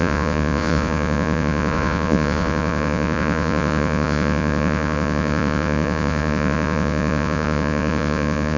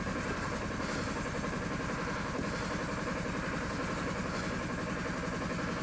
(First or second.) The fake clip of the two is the first